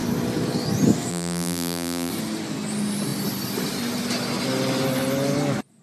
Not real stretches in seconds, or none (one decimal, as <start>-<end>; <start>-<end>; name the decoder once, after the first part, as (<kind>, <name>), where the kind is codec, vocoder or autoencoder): 1.1-2.1 (vocoder, BigVGAN v2)